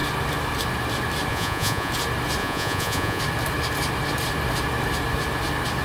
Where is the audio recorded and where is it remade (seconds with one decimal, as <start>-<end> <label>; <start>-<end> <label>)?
0.0-1.3 recorded; 1.3-1.9 remade; 1.9-2.4 recorded; 2.4-3.2 remade; 3.2-5.8 recorded